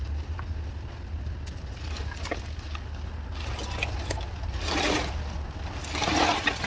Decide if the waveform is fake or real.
real